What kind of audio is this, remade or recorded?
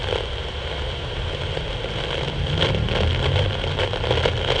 recorded